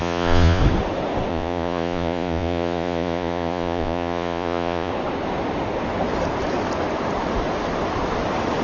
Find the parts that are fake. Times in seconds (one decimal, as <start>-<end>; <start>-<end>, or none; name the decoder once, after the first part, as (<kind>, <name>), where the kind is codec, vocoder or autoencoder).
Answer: 0.0-0.6 (vocoder, Vocos); 1.3-4.9